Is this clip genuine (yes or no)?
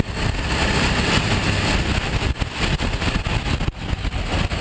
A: yes